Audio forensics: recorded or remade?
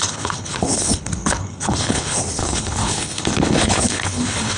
remade